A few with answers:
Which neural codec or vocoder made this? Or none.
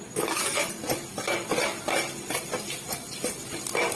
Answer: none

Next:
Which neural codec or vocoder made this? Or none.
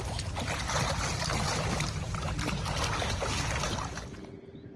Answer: none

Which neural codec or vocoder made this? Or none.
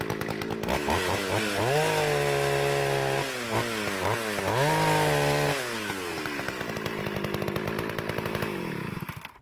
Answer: none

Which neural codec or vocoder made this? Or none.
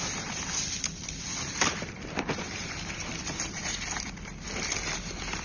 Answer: vocoder, BigVGAN v2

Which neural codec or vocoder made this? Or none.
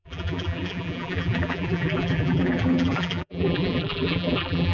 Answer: vocoder, BigVGAN v2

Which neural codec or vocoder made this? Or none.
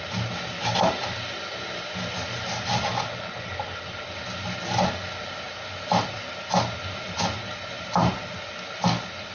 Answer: none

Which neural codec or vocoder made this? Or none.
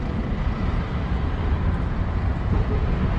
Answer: none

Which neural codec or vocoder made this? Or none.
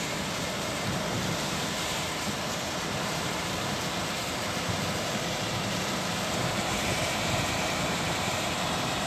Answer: vocoder, BigVGAN v2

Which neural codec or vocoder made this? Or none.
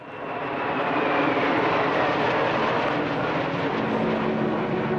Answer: none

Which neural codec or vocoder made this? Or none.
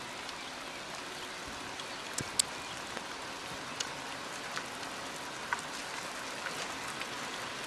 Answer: none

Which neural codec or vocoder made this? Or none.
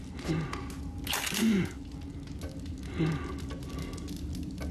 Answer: none